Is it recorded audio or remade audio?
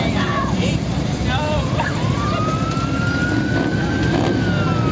recorded